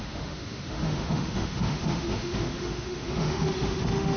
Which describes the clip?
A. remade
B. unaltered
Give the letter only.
A